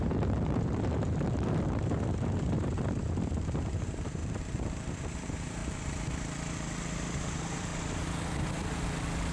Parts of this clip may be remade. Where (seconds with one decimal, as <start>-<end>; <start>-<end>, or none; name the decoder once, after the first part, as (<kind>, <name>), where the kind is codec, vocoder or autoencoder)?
0.0-5.6 (vocoder, BigVGAN v2); 7.3-7.7